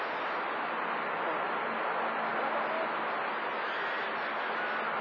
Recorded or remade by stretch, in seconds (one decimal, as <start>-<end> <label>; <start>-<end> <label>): 0.0-5.0 recorded